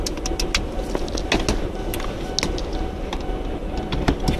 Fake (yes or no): no